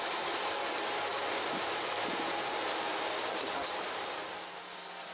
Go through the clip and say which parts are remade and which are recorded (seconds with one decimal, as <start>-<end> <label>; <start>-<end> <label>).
0.0-1.1 recorded; 1.1-4.2 remade; 4.2-5.1 recorded